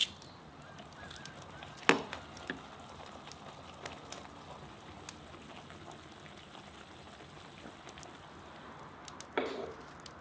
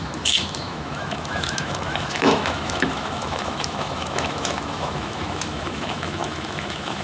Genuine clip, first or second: first